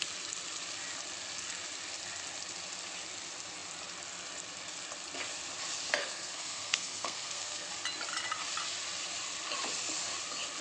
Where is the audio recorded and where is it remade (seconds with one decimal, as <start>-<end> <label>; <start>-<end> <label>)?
0.0-6.0 recorded; 6.0-7.7 remade; 7.7-10.6 recorded